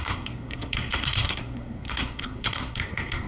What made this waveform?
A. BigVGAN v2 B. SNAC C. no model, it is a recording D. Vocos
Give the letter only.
B